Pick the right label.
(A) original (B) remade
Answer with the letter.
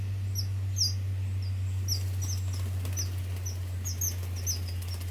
A